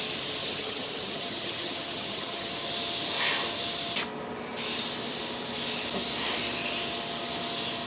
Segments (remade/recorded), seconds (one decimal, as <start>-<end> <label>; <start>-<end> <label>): 0.0-0.4 recorded; 0.4-2.5 remade; 2.5-7.9 recorded